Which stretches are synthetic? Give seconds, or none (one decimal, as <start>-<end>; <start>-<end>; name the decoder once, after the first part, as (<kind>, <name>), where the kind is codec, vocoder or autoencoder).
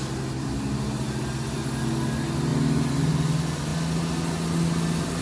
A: none